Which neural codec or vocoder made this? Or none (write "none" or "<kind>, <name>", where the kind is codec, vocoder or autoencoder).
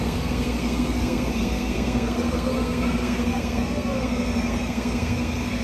codec, SNAC